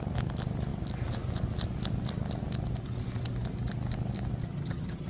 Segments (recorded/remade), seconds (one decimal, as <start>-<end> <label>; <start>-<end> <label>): 0.0-4.4 recorded; 4.4-5.1 remade